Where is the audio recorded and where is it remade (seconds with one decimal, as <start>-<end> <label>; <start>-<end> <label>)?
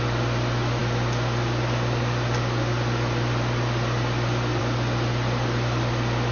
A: 0.0-6.3 recorded